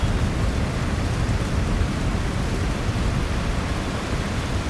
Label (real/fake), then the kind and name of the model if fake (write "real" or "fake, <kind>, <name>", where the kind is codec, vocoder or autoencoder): fake, vocoder, BigVGAN v2